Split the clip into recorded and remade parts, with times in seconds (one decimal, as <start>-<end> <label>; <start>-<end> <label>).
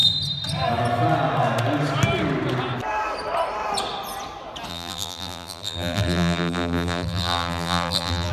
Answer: 0.0-4.7 recorded; 4.7-8.3 remade